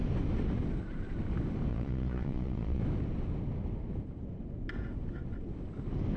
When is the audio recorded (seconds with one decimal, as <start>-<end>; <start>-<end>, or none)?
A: 0.0-1.7; 2.8-6.2